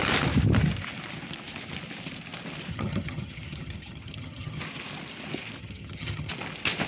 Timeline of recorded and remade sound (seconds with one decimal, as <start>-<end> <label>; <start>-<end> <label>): 0.0-2.7 recorded; 2.7-4.6 remade; 4.6-5.6 recorded; 5.6-6.3 remade; 6.3-6.9 recorded